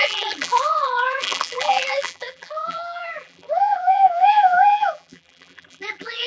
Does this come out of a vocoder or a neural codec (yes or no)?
yes